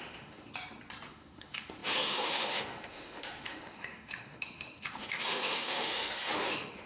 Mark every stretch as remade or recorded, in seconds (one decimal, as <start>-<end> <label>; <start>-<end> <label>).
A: 0.0-0.5 remade; 0.5-1.1 recorded; 1.1-6.9 remade

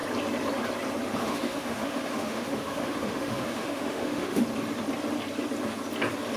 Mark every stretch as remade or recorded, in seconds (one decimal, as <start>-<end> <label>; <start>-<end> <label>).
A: 0.0-1.2 recorded; 1.2-4.4 remade; 4.4-6.4 recorded

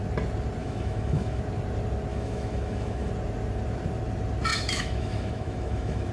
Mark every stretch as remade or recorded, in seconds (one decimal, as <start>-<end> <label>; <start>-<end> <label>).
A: 0.0-0.6 recorded; 0.6-1.4 remade; 1.4-2.1 recorded; 2.1-3.1 remade; 3.1-4.5 recorded; 4.5-6.1 remade

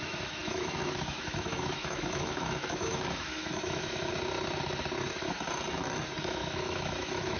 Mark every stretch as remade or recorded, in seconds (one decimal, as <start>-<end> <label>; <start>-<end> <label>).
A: 0.0-4.1 remade; 4.1-6.2 recorded; 6.2-7.4 remade